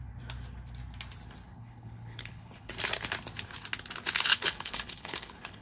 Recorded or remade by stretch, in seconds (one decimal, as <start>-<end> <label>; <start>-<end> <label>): 0.0-1.4 recorded; 1.4-2.7 remade; 2.7-4.3 recorded; 4.3-5.6 remade